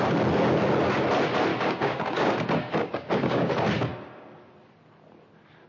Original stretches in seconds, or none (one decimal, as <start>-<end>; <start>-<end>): 0.0-1.5; 3.5-5.7